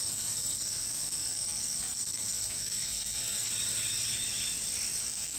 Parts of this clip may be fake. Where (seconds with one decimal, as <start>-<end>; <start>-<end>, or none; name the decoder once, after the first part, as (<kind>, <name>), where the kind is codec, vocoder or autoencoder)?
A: 0.0-3.5 (codec, SNAC); 5.0-5.4